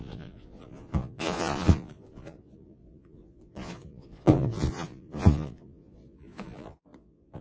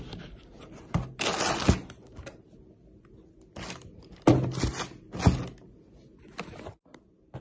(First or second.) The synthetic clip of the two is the first